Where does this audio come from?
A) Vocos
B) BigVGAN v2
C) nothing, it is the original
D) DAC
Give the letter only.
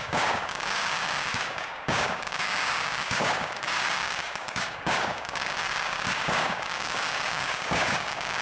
D